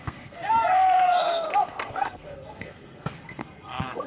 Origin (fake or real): fake